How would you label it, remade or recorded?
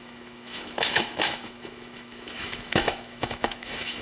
remade